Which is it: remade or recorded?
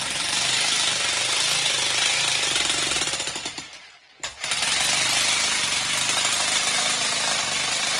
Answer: recorded